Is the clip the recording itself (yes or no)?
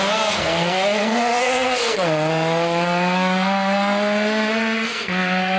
no